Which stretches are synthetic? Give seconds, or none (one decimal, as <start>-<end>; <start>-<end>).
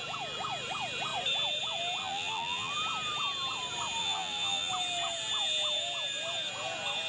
2.0-2.7; 4.0-4.7